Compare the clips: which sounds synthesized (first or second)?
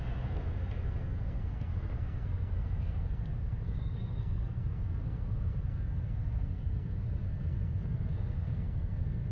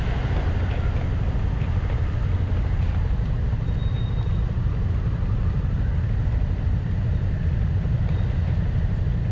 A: first